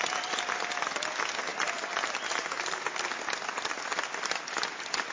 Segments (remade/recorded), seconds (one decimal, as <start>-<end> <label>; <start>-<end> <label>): 0.0-5.1 recorded